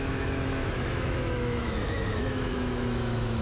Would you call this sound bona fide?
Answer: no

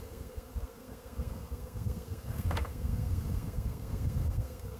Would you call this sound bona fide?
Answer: no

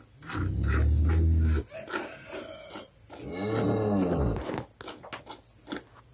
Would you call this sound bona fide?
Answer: yes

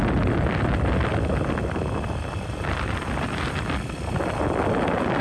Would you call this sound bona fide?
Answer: yes